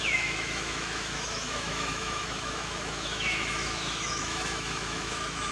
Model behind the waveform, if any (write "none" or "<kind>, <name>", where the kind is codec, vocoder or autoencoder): autoencoder, DAC-VAE